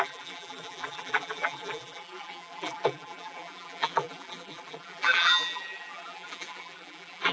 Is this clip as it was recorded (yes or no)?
no